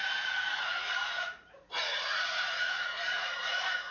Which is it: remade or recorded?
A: remade